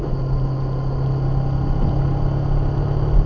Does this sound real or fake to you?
real